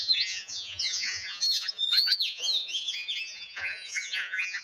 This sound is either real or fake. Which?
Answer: fake